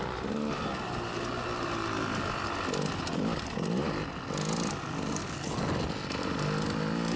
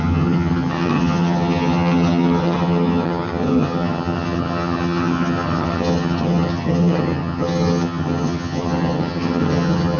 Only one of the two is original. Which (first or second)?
first